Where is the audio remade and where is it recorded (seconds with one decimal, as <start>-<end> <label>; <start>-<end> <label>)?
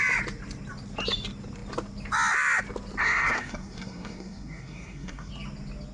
0.0-3.0 recorded; 3.0-5.3 remade; 5.3-5.9 recorded